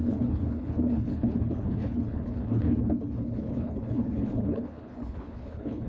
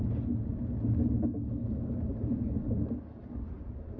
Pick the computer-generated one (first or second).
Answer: first